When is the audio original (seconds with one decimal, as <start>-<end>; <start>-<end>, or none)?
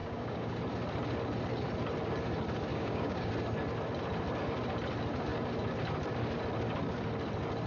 0.6-2.7; 3.3-7.7